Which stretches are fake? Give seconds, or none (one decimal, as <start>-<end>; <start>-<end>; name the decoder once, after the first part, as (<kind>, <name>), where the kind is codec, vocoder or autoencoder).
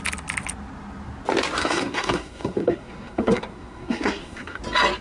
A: 1.6-4.6 (codec, SNAC)